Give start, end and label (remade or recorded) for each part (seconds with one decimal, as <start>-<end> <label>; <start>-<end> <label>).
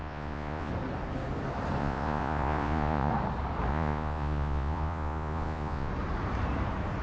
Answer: 0.0-0.7 remade; 0.7-1.8 recorded; 1.8-3.1 remade; 3.1-3.7 recorded; 3.7-5.9 remade; 5.9-7.0 recorded